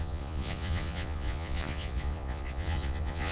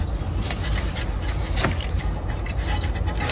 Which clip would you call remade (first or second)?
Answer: first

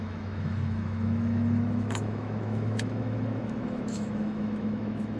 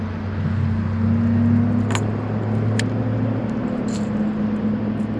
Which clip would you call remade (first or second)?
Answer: first